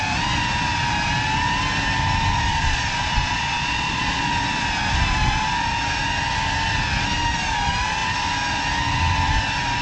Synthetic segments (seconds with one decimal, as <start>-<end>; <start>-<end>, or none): 2.5-4.2